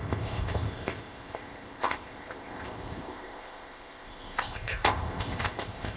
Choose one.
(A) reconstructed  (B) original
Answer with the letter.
A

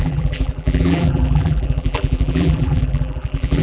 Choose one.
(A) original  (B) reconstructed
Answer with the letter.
B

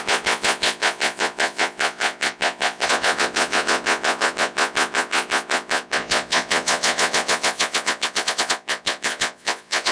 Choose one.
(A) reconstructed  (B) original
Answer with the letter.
A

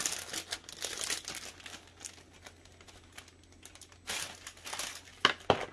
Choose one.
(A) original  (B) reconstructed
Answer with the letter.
A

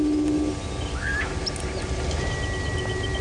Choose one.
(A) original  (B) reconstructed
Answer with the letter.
A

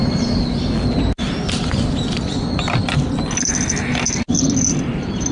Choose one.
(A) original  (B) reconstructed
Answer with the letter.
A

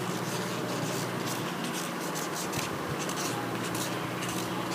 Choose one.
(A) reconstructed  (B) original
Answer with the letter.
B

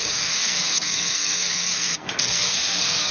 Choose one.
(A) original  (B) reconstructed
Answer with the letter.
B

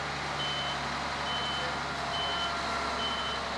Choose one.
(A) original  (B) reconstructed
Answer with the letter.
A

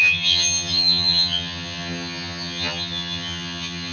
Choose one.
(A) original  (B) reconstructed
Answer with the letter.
B